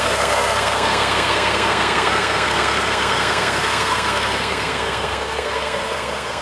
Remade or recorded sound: remade